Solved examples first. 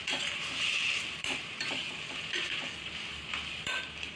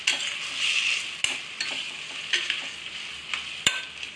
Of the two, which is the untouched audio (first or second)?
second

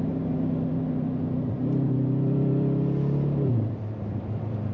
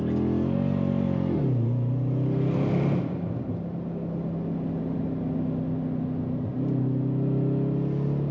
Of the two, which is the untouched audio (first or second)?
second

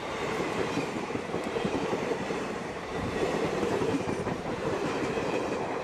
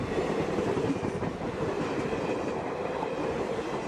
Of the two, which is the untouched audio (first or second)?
second